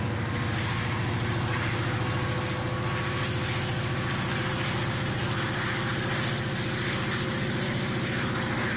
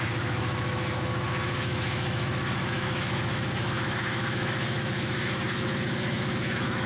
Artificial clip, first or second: second